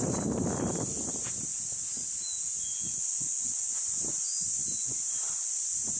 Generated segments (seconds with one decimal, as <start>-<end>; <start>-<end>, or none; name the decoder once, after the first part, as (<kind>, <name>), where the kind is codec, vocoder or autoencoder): none